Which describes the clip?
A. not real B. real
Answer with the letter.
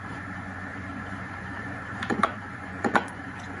A